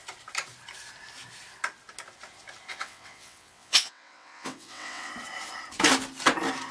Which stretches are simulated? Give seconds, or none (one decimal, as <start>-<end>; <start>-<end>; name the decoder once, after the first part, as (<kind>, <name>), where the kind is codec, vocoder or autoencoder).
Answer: 2.7-5.1 (vocoder, WaveNeXt)